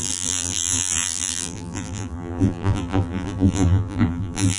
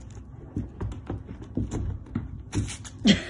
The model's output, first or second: first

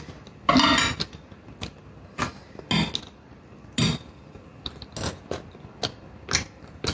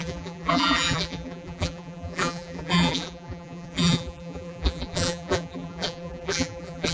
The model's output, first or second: second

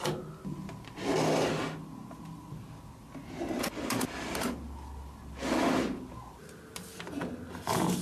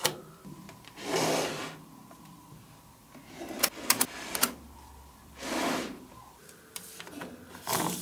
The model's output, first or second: second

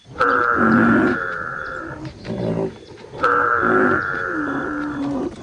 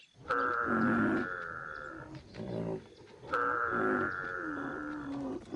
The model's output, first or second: first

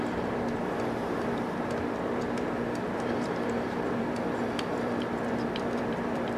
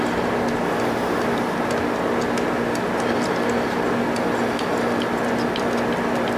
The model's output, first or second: first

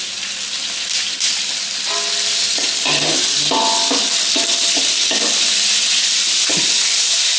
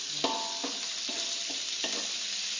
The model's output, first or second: second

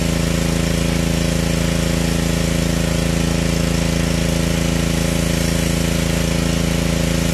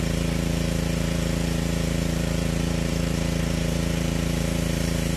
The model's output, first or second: second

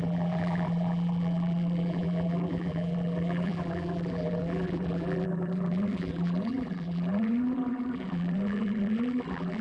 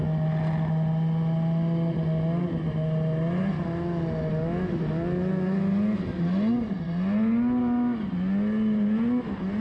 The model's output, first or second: first